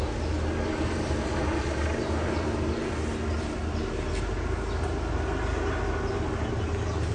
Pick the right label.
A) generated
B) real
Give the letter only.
B